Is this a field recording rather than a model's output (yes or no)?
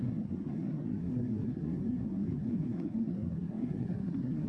no